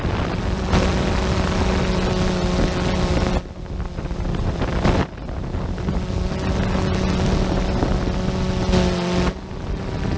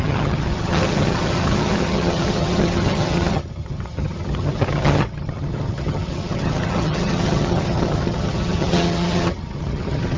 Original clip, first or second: first